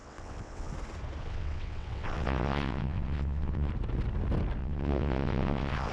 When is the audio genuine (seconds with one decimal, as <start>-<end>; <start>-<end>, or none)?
0.7-1.2; 3.7-4.6